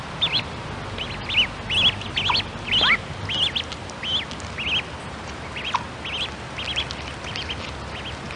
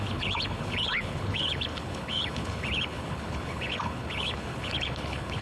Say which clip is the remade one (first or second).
second